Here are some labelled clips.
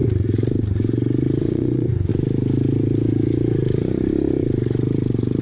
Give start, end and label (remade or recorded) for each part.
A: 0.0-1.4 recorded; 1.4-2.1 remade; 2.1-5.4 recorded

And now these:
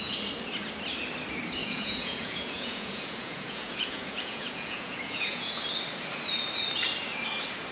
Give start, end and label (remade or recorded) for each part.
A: 0.0-1.6 recorded; 1.6-5.7 remade; 5.7-7.7 recorded

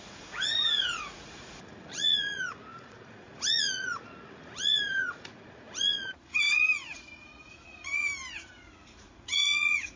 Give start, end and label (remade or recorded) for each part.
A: 0.0-10.0 remade

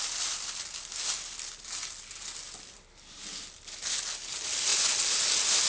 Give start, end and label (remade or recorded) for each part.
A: 0.0-5.7 recorded